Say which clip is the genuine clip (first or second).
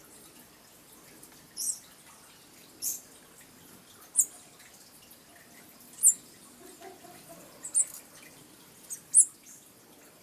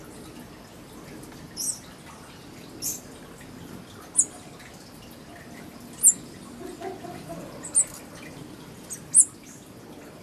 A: second